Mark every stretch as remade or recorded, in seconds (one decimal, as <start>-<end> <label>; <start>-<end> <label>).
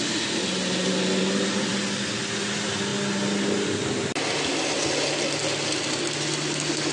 0.0-6.9 recorded